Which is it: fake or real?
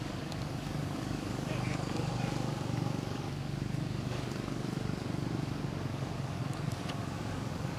fake